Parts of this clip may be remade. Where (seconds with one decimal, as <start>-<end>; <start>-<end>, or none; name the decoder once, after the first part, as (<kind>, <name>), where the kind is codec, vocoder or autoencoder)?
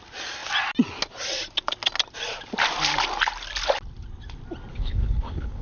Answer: 4.7-5.6 (codec, HILCodec)